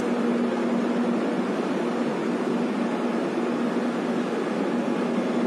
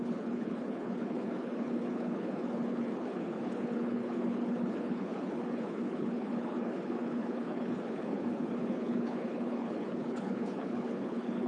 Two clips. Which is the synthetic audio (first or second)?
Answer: second